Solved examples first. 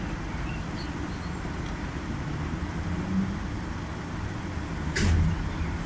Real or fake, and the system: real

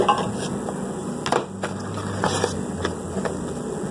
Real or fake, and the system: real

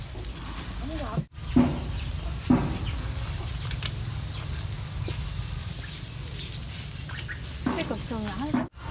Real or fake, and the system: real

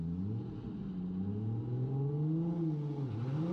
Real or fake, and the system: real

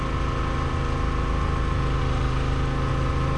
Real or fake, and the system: real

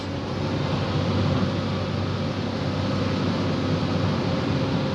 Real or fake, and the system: real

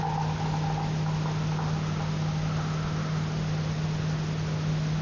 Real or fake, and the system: real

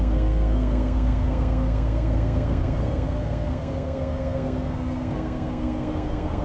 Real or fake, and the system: fake, codec, SNAC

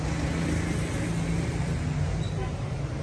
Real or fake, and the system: real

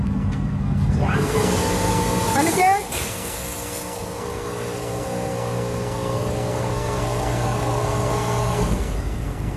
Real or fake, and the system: fake, codec, SNAC